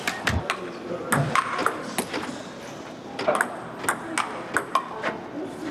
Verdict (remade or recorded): recorded